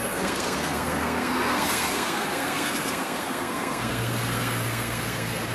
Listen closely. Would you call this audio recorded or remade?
remade